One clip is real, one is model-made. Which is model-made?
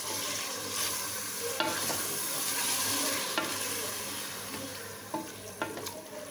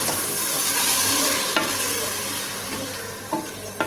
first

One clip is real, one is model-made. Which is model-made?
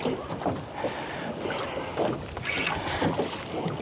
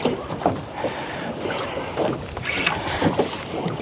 second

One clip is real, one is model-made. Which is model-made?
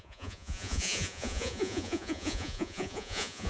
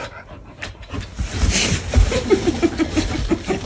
first